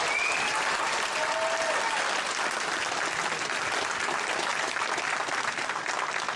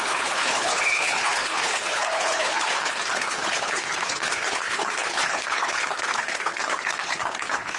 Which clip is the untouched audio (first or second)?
first